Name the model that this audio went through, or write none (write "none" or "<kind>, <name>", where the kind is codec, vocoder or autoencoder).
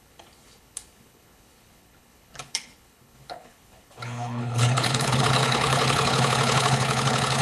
codec, HILCodec